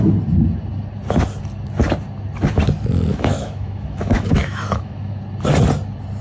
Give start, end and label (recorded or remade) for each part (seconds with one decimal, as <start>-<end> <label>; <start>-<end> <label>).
0.0-3.1 recorded; 3.1-5.2 remade; 5.2-6.2 recorded